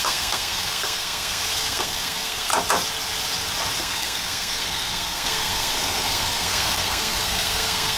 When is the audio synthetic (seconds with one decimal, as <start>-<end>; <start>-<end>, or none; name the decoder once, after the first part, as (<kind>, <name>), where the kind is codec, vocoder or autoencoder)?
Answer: 0.0-2.5 (codec, SNAC); 3.8-8.0